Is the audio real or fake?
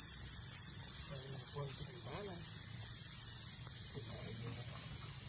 real